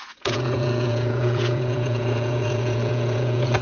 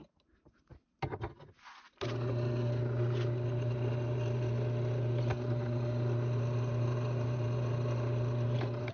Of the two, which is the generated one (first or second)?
first